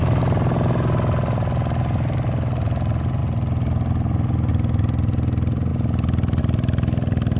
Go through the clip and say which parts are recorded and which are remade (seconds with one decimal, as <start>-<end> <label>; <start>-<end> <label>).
0.0-7.4 recorded